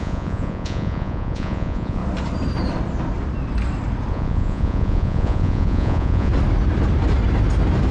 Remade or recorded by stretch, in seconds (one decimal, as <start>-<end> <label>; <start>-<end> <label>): 0.0-2.0 remade; 2.0-4.1 recorded; 4.1-6.3 remade; 6.3-7.9 recorded